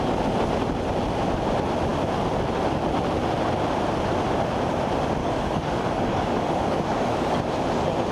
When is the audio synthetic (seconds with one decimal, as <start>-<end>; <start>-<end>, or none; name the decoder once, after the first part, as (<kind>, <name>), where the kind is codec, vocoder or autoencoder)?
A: 5.2-7.4 (codec, DAC)